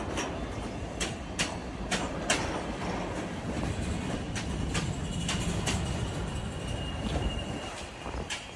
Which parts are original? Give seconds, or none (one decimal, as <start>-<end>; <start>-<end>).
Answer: none